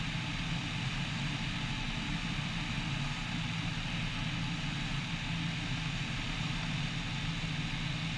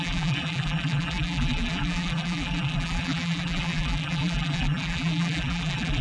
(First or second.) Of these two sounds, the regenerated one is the second